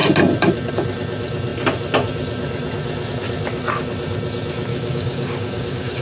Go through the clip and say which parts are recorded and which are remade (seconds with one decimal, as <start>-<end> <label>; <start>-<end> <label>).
0.0-4.7 recorded; 4.7-6.0 remade